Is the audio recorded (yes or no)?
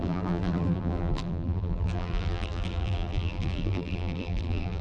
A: no